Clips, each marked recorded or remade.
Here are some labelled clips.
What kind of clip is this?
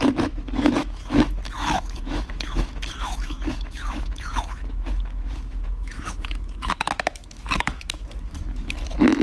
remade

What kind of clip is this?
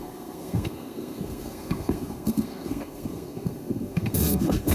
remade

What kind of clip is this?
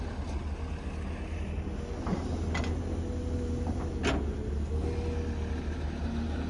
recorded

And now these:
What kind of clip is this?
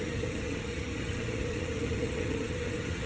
remade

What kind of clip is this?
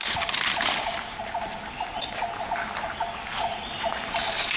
recorded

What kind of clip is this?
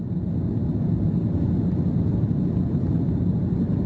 recorded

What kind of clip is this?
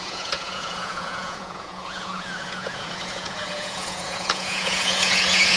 remade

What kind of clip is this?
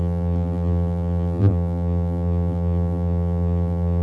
remade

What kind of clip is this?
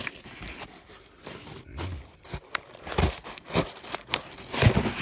recorded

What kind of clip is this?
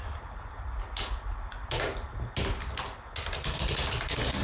recorded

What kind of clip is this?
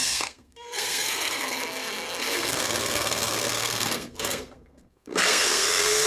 remade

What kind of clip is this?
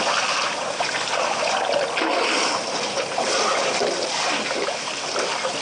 recorded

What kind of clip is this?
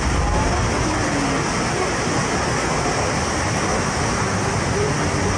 recorded